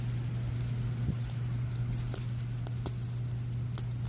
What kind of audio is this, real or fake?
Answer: real